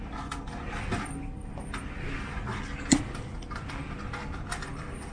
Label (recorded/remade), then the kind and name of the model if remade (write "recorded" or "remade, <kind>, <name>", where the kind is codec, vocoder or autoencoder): recorded